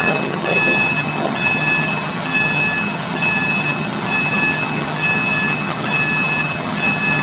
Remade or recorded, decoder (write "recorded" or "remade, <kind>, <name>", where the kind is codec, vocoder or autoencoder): remade, vocoder, HiFi-GAN